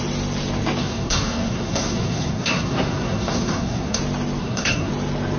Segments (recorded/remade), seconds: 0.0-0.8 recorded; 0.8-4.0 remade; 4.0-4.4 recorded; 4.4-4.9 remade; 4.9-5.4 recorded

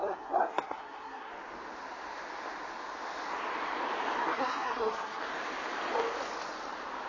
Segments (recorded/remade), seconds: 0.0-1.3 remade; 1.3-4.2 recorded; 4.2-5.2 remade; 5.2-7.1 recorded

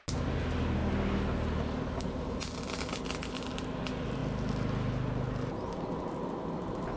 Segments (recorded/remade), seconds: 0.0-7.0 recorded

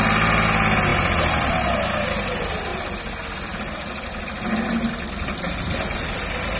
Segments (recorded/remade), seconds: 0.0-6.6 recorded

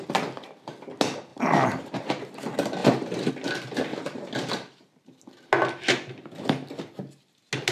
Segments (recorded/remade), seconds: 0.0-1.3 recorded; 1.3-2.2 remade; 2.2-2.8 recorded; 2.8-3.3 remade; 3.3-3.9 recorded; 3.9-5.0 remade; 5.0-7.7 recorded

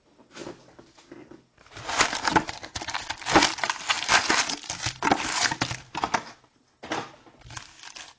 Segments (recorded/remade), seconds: 0.0-8.2 recorded